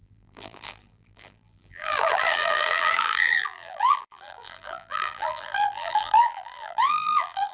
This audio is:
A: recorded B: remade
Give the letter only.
B